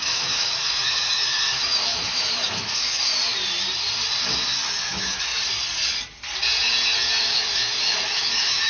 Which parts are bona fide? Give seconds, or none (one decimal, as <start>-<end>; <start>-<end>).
3.2-4.8; 5.3-7.2